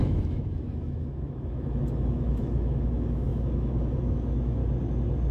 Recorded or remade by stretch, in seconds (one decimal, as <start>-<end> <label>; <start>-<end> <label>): 0.0-4.6 remade; 4.6-5.3 recorded